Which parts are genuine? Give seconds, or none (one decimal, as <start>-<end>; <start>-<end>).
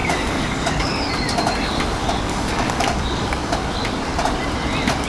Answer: 1.1-2.0; 3.7-5.1